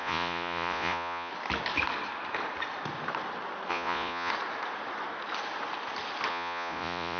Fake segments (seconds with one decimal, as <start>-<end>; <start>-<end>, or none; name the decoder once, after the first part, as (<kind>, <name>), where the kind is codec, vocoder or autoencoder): 0.0-1.3 (vocoder, Vocos); 3.7-4.3; 6.3-7.2